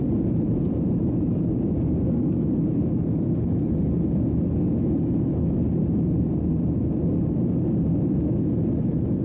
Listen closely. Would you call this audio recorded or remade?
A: recorded